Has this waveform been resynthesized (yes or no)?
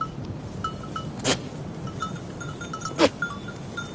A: no